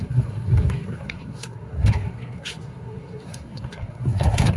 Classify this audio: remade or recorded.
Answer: remade